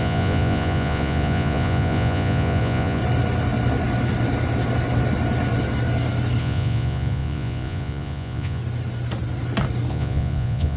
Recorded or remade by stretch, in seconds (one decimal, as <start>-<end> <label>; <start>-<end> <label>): 0.0-3.0 remade; 3.0-6.4 recorded; 6.4-8.6 remade; 8.6-9.9 recorded; 9.9-10.8 remade